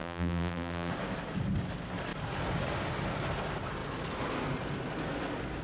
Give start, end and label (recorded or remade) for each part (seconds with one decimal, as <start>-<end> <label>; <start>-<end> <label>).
0.0-0.9 remade; 0.9-5.6 recorded